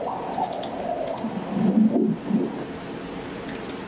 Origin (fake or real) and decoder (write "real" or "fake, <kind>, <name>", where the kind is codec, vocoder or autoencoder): real